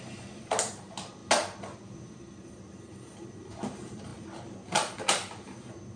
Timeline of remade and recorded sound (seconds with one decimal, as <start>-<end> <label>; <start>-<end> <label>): 0.0-6.0 recorded